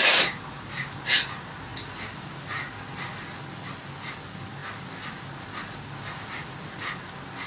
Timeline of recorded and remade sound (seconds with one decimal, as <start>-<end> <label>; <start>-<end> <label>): 0.0-7.5 recorded